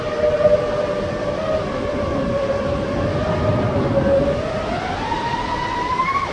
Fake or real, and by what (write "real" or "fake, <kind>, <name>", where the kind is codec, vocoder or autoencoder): fake, vocoder, BigVGAN v2